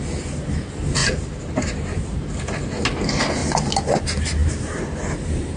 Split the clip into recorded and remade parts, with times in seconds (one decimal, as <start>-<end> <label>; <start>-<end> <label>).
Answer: 0.0-1.0 recorded; 1.0-2.5 remade; 2.5-4.4 recorded; 4.4-5.6 remade